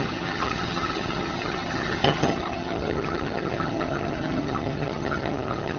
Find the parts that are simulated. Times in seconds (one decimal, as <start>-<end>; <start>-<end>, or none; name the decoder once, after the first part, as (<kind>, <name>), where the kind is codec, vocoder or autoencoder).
0.0-5.8 (vocoder, HiFi-GAN)